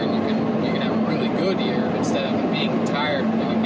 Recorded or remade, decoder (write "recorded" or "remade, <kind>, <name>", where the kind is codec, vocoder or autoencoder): recorded